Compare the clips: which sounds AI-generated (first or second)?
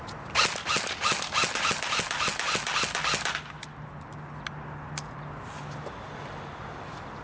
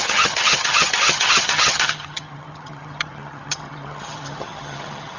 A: second